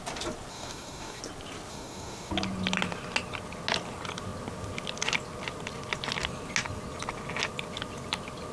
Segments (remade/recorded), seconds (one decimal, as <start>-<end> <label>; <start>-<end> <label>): 0.0-0.5 recorded; 0.5-1.2 remade; 1.2-1.7 recorded; 1.7-2.3 remade; 2.3-8.5 recorded